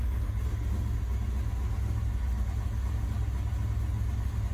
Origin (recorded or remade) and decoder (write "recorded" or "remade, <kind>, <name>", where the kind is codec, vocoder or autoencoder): recorded